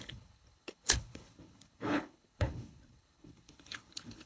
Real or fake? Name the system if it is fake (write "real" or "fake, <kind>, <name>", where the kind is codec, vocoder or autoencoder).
fake, codec, HILCodec